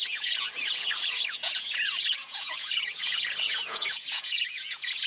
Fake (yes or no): yes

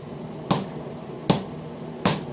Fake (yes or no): no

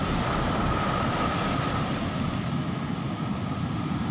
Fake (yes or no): no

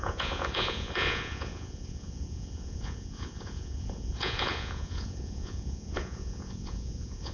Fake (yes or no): yes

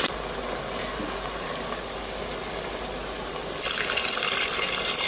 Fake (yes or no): no